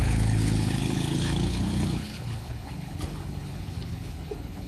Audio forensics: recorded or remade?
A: remade